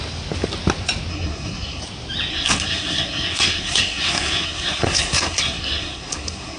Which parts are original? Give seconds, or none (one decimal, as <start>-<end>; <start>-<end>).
0.0-1.1; 1.8-2.3